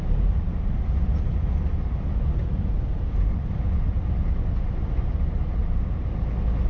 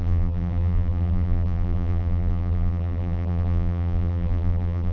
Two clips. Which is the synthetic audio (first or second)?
second